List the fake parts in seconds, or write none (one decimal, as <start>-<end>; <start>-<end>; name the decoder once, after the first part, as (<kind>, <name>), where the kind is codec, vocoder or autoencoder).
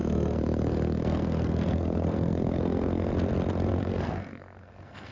0.0-3.1 (codec, SNAC); 3.7-5.1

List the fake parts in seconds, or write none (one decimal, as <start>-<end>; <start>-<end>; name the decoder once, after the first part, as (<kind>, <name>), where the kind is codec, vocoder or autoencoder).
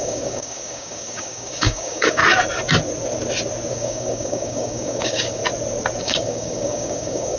0.0-2.2 (codec, DAC); 3.7-5.4; 6.0-7.4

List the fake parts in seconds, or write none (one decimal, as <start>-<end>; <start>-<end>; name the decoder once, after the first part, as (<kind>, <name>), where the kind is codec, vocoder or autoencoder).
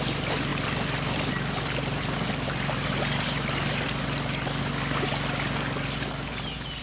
none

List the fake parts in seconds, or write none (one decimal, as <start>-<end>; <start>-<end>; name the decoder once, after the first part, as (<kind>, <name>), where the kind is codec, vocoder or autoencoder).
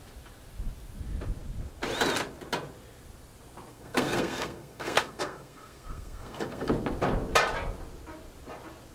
3.7-6.7 (codec, SNAC)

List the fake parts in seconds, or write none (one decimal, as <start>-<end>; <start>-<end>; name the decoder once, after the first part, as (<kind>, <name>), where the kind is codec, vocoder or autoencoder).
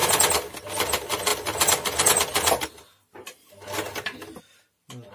none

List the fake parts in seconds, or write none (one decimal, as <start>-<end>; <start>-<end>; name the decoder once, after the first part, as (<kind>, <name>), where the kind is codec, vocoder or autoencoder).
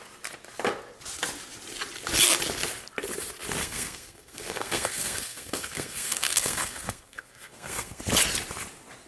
3.6-8.0 (codec, SNAC)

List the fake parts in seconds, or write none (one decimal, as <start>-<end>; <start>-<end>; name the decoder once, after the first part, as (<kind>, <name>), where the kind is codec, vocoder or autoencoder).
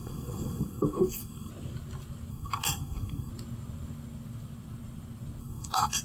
0.0-1.5 (codec, SNAC); 2.3-3.3; 5.4-6.0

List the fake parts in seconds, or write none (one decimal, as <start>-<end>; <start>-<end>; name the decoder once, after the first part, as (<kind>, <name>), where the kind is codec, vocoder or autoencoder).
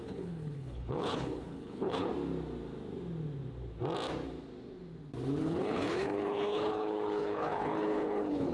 0.0-2.1 (codec, HILCodec); 5.4-8.5